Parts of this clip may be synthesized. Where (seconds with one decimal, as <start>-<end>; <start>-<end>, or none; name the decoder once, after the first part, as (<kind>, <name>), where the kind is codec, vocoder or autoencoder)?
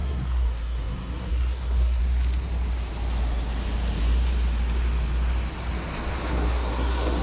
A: 0.0-2.0 (codec, SNAC); 6.3-7.2